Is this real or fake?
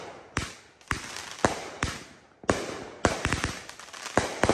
real